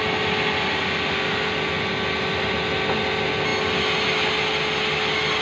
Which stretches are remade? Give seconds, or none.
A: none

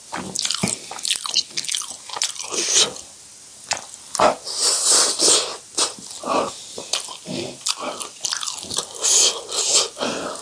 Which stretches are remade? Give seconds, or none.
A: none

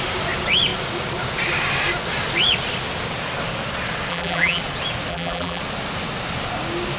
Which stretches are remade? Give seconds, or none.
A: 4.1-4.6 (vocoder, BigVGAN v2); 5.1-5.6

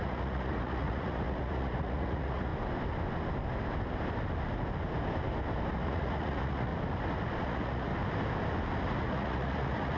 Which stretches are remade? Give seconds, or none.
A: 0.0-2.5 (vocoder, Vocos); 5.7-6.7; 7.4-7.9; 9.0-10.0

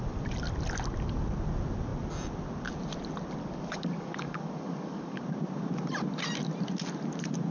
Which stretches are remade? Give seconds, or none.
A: 3.4-5.2 (codec, DAC)

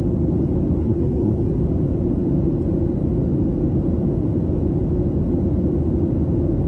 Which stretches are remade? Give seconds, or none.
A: 0.8-1.6 (codec, SNAC)

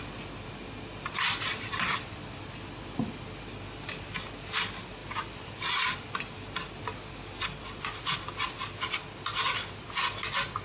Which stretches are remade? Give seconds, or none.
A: 5.0-6.1 (vocoder, BigVGAN v2)

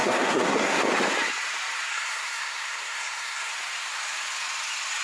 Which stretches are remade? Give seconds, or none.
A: 0.0-0.8 (codec, SNAC); 1.9-3.5